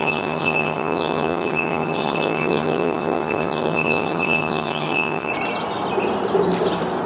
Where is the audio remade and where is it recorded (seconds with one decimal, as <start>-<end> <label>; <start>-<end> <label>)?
0.0-5.3 remade; 5.3-7.1 recorded